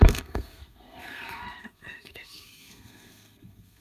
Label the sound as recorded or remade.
remade